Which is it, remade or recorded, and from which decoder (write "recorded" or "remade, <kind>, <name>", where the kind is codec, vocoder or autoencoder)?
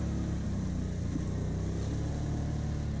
recorded